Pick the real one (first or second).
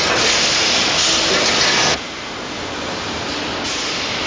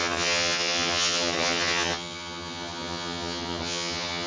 first